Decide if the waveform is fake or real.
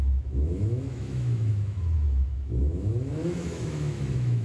fake